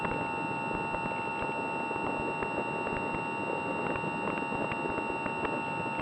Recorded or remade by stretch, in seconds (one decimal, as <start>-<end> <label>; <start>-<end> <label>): 0.0-6.0 recorded